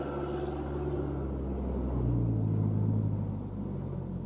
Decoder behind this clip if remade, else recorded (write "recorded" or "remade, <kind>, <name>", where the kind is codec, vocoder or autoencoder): recorded